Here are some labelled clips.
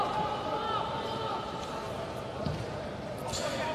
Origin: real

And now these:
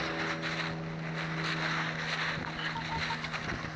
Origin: real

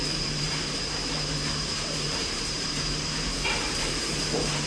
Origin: fake